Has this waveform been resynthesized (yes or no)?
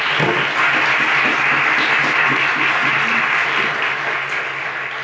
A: no